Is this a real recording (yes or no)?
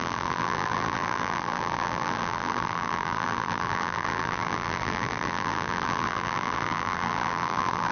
no